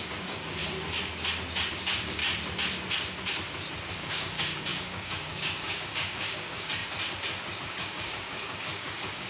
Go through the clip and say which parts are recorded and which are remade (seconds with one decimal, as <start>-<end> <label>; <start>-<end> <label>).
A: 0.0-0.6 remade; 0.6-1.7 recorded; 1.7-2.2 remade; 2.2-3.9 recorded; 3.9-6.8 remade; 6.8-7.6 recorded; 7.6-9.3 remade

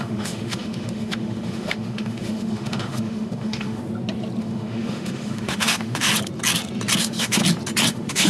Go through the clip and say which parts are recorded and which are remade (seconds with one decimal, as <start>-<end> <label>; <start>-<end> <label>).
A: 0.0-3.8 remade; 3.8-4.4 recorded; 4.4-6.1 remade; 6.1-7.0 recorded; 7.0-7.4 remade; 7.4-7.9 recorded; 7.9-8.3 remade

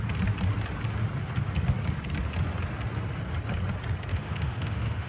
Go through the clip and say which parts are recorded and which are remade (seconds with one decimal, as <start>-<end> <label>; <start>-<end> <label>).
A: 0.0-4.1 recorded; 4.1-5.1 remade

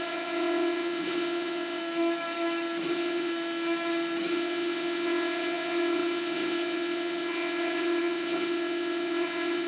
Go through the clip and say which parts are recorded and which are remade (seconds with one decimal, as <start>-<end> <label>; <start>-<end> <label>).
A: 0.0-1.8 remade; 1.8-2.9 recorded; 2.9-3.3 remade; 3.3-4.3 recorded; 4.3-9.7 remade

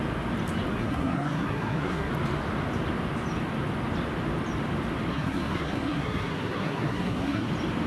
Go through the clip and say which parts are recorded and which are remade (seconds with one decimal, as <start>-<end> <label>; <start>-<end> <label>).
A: 0.0-0.7 recorded; 0.7-2.1 remade; 2.1-5.1 recorded; 5.1-7.5 remade; 7.5-7.9 recorded

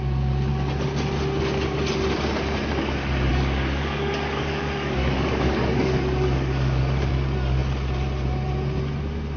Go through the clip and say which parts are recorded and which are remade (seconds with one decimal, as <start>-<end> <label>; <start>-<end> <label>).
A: 0.0-3.3 recorded; 3.3-7.1 remade; 7.1-9.4 recorded

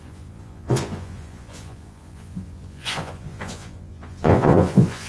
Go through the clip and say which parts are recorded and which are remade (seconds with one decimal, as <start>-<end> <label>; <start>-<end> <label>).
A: 0.0-5.1 remade